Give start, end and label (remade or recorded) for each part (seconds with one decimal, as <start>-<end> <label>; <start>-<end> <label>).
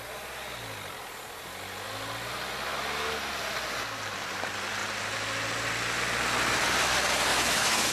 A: 0.0-7.3 recorded; 7.3-7.9 remade